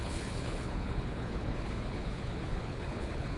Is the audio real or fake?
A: fake